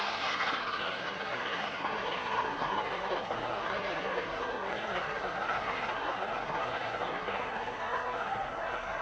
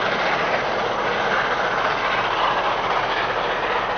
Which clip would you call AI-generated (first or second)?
first